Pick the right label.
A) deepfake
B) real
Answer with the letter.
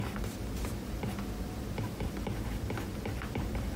A